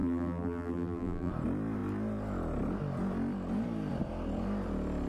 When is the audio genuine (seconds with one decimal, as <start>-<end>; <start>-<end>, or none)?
1.3-5.1